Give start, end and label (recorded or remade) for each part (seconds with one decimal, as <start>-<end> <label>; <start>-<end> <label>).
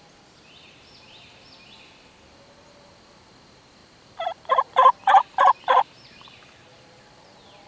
0.0-3.8 recorded; 3.8-7.0 remade; 7.0-7.7 recorded